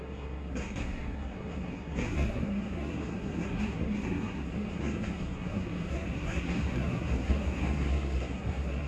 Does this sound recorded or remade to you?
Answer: remade